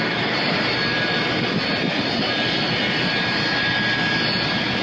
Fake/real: real